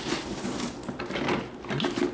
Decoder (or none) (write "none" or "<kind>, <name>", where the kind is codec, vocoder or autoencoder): none